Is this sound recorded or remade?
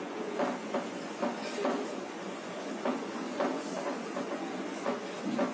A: remade